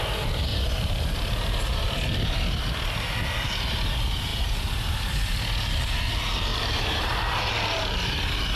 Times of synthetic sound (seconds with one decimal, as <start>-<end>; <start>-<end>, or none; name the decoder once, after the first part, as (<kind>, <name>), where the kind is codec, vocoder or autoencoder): 0.5-1.0 (vocoder, BigVGAN v2); 6.5-7.5